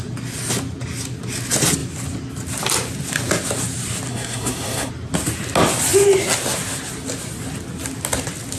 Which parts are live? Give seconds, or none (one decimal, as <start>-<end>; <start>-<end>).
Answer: 0.0-4.1; 4.9-8.6